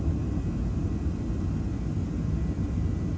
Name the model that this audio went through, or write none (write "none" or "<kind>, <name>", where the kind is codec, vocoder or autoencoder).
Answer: none